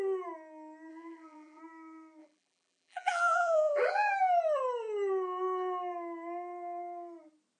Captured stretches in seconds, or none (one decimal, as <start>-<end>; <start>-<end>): 0.0-0.9; 1.6-2.2; 4.1-7.6